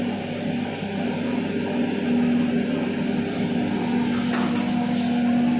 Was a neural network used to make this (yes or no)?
no